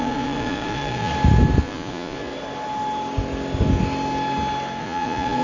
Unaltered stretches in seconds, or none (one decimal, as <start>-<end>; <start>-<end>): 1.1-1.6; 2.3-4.8